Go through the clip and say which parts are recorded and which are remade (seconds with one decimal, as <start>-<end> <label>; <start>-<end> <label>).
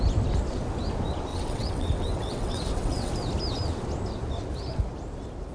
0.0-1.3 recorded; 1.3-3.1 remade; 3.1-5.5 recorded